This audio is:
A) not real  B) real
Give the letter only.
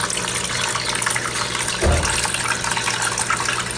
B